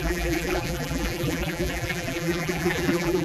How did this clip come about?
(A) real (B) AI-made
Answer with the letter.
B